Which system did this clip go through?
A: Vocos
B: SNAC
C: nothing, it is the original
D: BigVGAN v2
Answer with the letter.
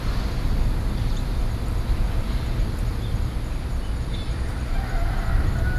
C